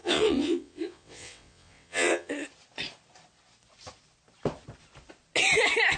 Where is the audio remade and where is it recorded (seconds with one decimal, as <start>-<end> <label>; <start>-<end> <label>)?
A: 0.0-2.3 remade; 2.3-6.0 recorded